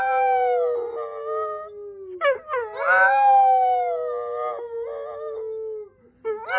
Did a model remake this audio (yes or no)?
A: no